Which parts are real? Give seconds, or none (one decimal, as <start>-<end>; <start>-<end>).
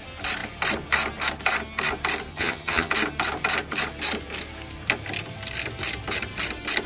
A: 0.0-2.3; 2.9-6.9